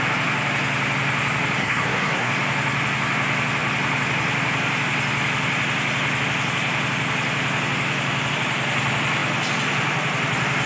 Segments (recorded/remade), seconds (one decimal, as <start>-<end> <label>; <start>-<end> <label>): 0.0-1.6 recorded; 1.6-2.3 remade; 2.3-10.7 recorded